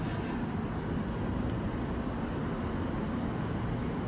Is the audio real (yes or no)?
yes